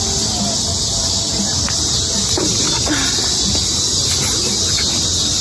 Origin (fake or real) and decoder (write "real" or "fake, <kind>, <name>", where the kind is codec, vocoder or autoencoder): real